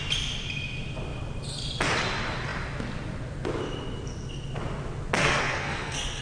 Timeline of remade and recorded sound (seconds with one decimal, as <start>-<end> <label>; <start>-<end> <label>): 0.0-5.2 recorded; 5.2-6.2 remade